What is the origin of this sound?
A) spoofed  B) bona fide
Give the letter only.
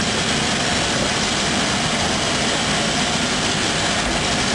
B